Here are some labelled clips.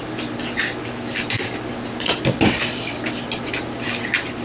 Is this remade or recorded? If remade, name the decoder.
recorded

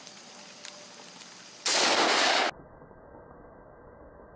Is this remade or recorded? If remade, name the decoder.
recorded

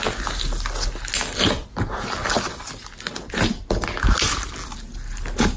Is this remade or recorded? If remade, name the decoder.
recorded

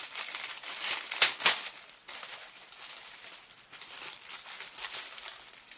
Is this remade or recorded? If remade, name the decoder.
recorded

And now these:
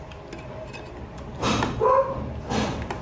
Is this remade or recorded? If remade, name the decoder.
recorded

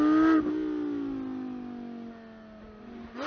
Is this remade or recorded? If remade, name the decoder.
recorded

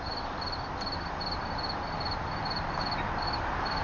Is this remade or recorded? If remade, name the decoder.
recorded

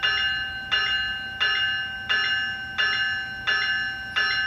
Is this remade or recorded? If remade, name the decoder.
recorded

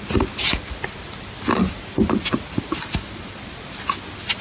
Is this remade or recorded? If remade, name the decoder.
recorded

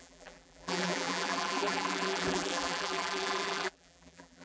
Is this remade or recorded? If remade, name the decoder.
remade, vocoder, BigVGAN v2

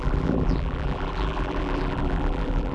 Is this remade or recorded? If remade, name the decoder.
remade, vocoder, BigVGAN v2